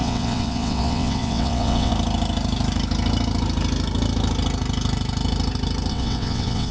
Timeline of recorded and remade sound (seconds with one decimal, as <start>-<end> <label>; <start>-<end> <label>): 0.0-1.9 remade; 1.9-5.9 recorded; 5.9-6.7 remade